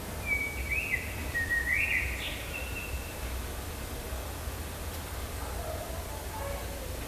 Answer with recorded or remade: recorded